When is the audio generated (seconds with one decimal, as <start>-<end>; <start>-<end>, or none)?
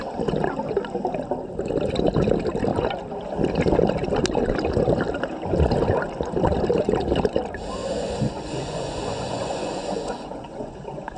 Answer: 7.8-11.2